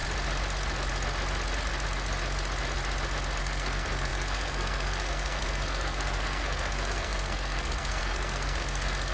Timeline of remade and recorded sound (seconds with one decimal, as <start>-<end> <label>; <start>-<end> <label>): 0.0-3.4 recorded; 3.4-9.1 remade

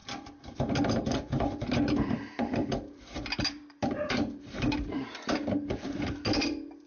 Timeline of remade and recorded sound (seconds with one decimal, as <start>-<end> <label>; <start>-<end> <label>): 0.0-6.9 remade

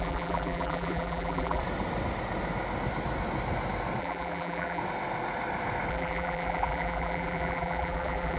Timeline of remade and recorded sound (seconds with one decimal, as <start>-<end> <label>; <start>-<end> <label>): 0.0-1.6 remade; 1.6-4.0 recorded; 4.0-4.8 remade; 4.8-5.9 recorded; 5.9-8.4 remade